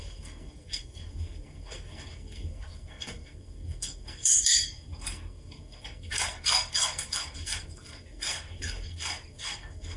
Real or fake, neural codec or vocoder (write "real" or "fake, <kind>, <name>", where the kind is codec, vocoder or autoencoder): fake, codec, SNAC